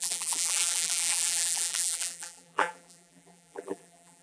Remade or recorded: remade